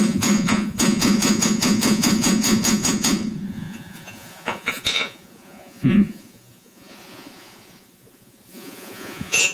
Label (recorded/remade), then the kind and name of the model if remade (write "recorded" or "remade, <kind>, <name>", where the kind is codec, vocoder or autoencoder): remade, vocoder, Vocos